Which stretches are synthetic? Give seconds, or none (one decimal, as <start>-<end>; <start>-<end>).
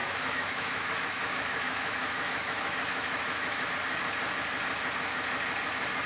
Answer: 0.0-3.7